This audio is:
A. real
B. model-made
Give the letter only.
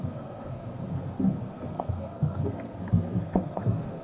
B